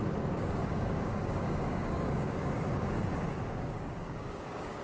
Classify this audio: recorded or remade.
remade